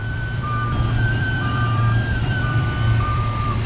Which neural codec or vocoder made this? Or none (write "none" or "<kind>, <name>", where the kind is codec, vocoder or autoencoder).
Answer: vocoder, BigVGAN v2